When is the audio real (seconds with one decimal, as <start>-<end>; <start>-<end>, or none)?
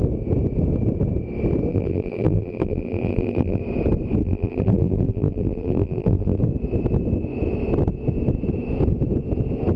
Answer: 0.0-1.7; 3.6-4.2; 6.4-9.8